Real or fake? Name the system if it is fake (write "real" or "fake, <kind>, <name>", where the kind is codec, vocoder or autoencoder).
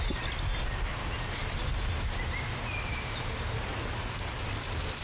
real